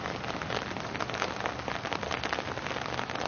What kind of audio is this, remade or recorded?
recorded